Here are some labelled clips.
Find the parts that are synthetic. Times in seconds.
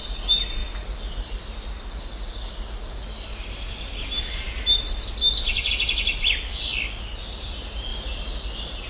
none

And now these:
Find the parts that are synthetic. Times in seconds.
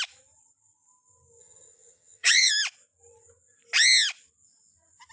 1.4-2.5 (vocoder, HiFi-GAN)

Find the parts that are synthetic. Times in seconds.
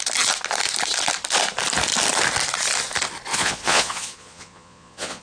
3.3-5.2 (vocoder, Vocos)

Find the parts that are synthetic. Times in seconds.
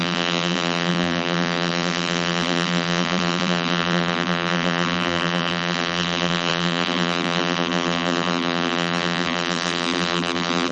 0.0-10.7 (vocoder, BigVGAN v2)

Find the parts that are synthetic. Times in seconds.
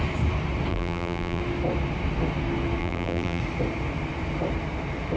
0.7-1.4 (vocoder, BigVGAN v2); 2.8-3.4